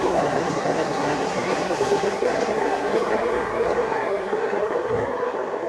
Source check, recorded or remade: remade